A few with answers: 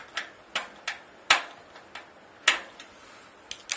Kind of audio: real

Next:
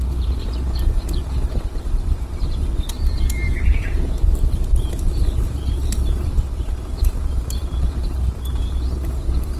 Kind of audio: fake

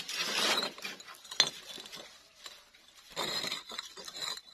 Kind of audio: real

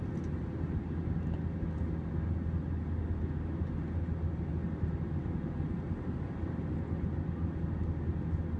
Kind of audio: real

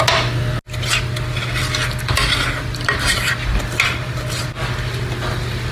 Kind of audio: real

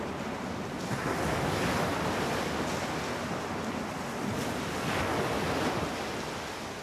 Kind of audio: real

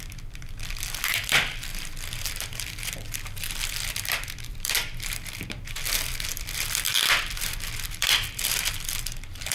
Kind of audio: fake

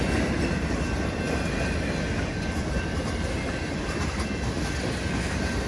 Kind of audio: real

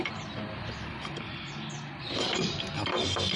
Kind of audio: real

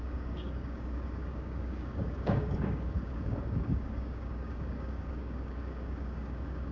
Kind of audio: fake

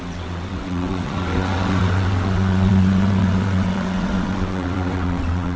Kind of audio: fake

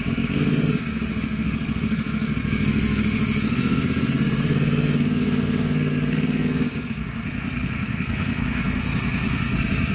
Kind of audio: fake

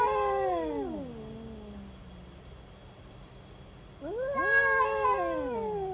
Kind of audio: real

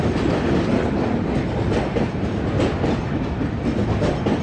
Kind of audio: real